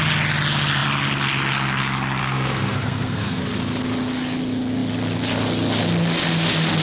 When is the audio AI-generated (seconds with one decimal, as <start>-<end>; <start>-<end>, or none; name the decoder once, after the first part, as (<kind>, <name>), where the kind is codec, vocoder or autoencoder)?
2.2-3.4 (codec, SNAC)